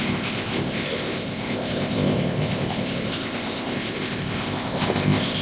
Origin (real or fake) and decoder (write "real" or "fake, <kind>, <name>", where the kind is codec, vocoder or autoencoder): fake, codec, ZipCodec